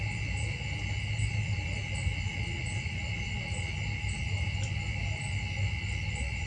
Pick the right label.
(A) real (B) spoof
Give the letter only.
A